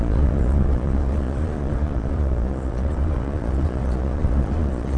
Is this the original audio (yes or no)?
no